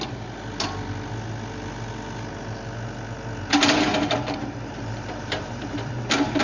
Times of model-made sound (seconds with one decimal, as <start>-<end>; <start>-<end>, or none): 3.9-6.4